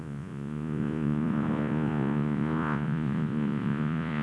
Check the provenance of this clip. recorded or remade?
remade